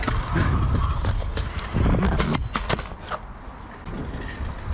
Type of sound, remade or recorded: recorded